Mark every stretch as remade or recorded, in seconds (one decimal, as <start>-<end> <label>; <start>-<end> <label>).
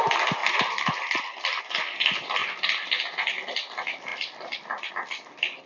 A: 0.0-0.4 recorded; 0.4-1.6 remade; 1.6-2.4 recorded; 2.4-3.0 remade; 3.0-4.1 recorded; 4.1-4.9 remade; 4.9-5.7 recorded